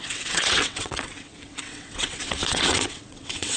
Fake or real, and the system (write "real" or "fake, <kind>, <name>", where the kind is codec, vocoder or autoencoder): fake, vocoder, WaveNeXt